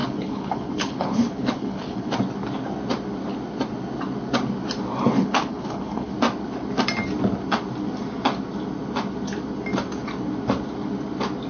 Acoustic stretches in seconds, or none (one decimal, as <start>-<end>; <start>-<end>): 2.1-5.0; 6.1-11.5